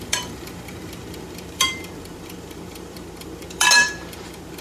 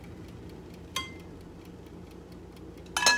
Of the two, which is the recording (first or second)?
second